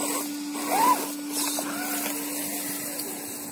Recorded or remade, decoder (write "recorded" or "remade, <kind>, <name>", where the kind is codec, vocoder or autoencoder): recorded